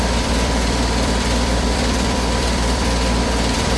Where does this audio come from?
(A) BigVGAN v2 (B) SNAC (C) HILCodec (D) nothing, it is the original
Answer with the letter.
A